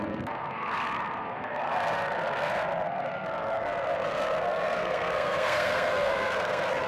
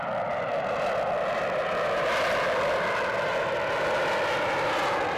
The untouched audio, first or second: second